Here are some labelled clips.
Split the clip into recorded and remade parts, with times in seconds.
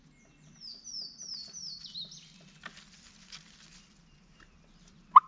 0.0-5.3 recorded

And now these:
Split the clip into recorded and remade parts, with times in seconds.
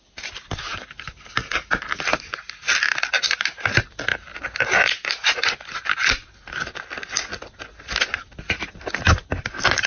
0.0-9.9 recorded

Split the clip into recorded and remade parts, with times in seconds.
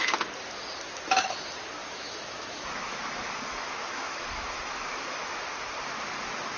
0.0-1.8 recorded; 1.8-5.5 remade; 5.5-6.6 recorded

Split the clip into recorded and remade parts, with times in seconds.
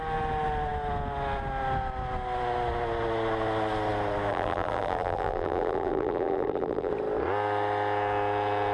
0.0-4.3 recorded; 4.3-6.9 remade; 6.9-8.7 recorded